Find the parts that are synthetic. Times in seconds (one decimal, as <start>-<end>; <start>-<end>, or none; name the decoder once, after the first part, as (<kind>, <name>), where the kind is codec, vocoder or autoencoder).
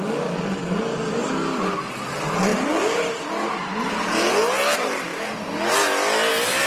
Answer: none